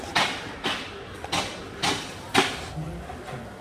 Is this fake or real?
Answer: real